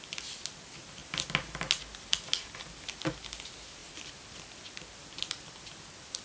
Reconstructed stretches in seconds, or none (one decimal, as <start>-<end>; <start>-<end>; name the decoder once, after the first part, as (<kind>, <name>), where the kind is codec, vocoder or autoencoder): none